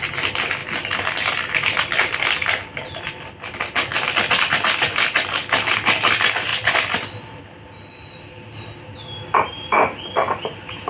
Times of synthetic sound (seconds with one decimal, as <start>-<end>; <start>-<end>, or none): none